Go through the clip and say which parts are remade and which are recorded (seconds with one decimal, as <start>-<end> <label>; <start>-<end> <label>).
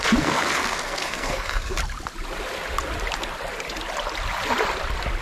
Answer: 0.0-1.8 remade; 1.8-5.2 recorded